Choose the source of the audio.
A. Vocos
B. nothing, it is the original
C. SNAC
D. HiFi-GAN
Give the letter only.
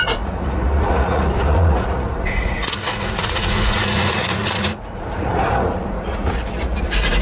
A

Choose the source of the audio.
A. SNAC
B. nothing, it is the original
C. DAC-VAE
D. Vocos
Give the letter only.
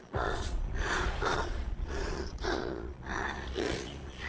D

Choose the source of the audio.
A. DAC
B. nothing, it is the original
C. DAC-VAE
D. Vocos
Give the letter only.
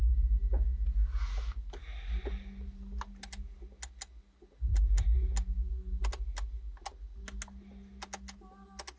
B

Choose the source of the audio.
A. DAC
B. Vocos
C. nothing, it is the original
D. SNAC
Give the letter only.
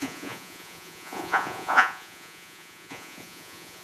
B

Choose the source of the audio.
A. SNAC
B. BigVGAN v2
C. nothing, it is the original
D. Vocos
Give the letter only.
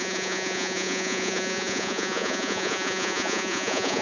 D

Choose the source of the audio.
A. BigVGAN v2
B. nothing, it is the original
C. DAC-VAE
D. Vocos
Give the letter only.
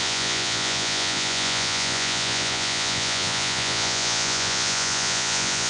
D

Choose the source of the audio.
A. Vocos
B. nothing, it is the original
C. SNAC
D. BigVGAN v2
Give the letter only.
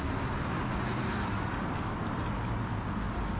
B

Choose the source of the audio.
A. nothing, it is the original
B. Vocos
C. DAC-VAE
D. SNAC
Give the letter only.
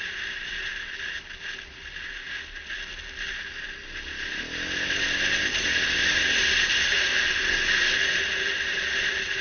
A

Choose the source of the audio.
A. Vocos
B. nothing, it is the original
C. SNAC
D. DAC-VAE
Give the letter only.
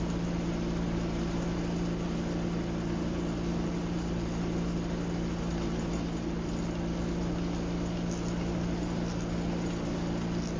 B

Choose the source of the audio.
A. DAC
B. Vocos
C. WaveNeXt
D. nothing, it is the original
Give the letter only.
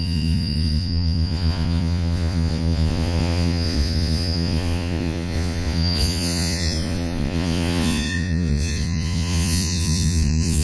B